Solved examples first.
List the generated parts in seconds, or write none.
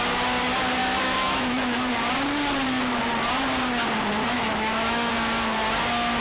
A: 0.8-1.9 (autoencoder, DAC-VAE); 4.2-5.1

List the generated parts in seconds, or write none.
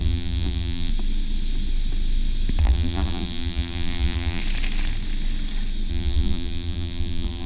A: 0.0-0.9 (vocoder, BigVGAN v2); 2.6-4.4; 5.9-7.5